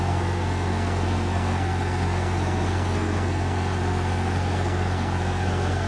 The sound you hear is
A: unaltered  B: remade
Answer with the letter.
B